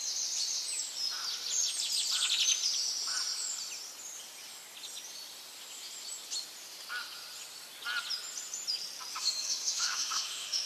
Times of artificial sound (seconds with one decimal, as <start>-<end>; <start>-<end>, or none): 9.1-10.7